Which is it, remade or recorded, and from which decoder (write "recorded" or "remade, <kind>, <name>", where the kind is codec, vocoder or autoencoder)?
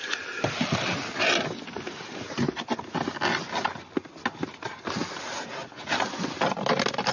recorded